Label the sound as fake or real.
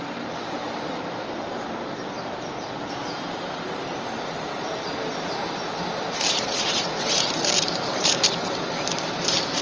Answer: fake